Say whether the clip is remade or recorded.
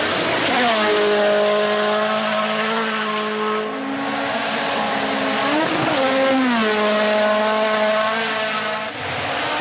recorded